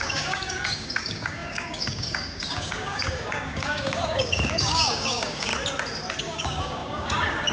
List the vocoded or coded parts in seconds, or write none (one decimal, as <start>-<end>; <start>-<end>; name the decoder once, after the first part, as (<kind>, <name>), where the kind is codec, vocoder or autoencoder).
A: 0.0-5.5 (codec, DAC); 6.2-7.5